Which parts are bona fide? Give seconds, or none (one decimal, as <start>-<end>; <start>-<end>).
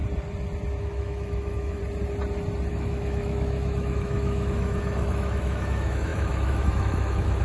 0.0-0.8; 1.8-2.7